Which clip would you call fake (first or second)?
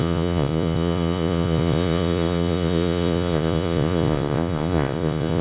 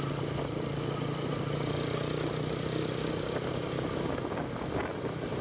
first